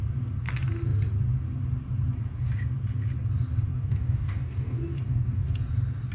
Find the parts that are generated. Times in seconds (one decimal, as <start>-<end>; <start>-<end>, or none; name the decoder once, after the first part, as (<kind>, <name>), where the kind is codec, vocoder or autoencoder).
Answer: 3.7-5.6 (codec, DAC)